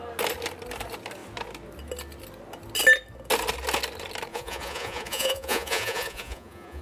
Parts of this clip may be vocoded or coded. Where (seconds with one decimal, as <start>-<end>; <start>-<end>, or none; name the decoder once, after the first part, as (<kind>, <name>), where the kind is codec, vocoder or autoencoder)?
4.3-6.8 (vocoder, Vocos)